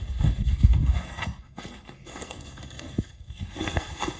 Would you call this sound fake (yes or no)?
yes